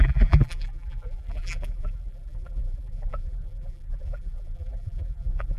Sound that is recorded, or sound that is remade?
remade